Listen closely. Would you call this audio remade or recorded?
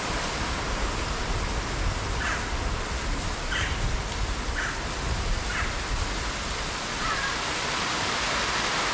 recorded